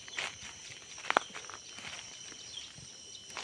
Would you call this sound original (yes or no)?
yes